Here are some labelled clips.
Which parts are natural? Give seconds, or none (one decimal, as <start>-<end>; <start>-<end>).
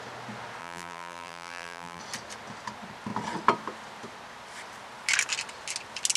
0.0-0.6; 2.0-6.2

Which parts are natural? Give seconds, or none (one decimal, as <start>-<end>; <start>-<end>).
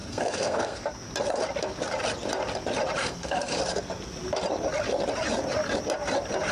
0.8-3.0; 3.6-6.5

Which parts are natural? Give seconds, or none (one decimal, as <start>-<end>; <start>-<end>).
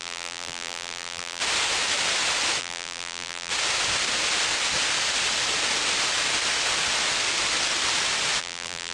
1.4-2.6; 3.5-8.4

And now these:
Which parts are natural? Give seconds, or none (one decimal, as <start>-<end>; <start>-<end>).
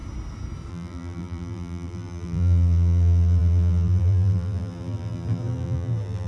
0.0-0.7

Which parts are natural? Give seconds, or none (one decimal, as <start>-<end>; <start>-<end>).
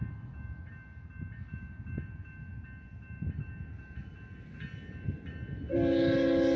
0.0-6.6